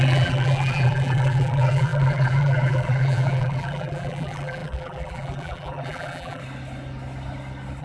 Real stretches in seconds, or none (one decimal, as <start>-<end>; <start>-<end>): 6.4-7.8